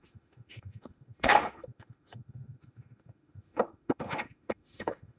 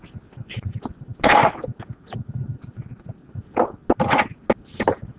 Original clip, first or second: second